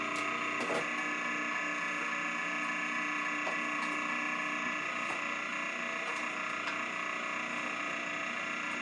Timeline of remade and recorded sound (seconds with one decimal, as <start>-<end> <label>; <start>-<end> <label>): 0.0-8.8 recorded